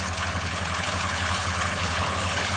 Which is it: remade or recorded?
remade